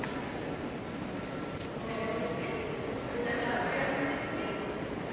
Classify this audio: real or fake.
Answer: real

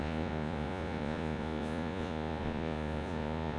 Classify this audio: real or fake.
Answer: fake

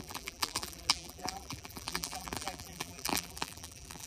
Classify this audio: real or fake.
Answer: fake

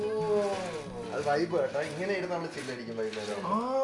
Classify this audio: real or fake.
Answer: real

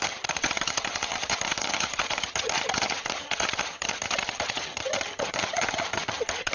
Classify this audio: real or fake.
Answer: fake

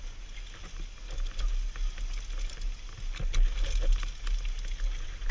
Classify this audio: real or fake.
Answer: real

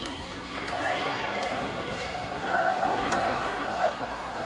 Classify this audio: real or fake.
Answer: fake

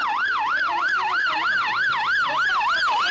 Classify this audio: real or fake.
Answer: real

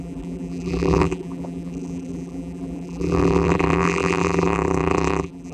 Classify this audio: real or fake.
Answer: fake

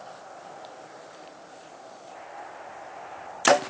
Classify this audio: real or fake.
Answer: real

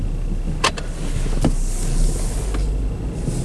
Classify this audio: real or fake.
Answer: real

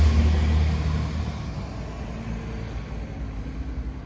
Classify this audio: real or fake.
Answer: real